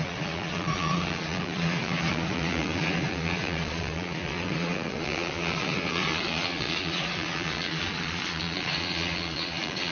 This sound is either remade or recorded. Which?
remade